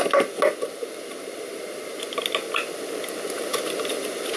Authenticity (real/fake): real